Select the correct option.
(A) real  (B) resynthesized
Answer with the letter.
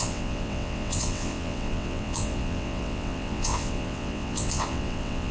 B